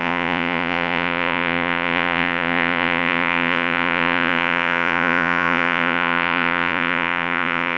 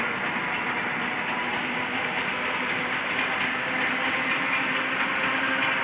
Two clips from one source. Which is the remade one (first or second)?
first